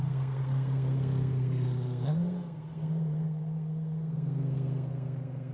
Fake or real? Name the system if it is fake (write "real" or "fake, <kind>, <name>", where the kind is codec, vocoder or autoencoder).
fake, codec, SNAC